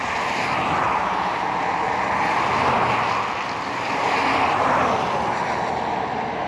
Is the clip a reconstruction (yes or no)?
no